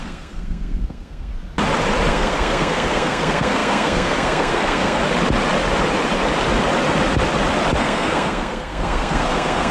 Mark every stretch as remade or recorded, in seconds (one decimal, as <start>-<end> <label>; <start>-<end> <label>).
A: 0.0-1.3 remade; 1.3-2.1 recorded; 2.1-5.0 remade; 5.0-7.8 recorded; 7.8-9.7 remade